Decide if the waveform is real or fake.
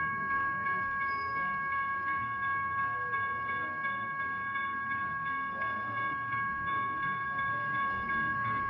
fake